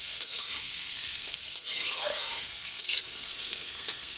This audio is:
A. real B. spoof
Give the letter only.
B